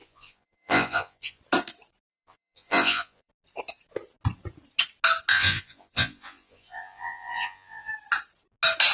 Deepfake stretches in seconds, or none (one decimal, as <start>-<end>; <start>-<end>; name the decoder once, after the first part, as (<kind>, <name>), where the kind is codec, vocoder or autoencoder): 0.0-1.4 (vocoder, Vocos); 2.1-3.3; 5.3-7.9